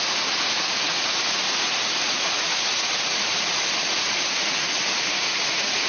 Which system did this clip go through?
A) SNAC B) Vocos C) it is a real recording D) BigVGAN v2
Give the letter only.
B